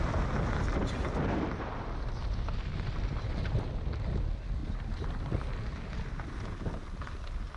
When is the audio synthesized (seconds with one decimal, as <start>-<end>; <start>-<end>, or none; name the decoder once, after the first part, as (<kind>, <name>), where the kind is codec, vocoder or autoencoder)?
none